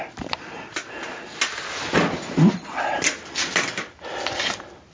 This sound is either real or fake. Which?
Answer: real